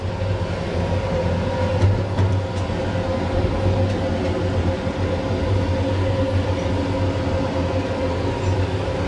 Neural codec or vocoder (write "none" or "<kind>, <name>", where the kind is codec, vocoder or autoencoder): none